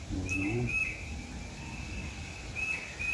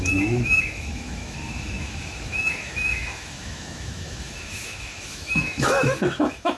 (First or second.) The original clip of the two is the first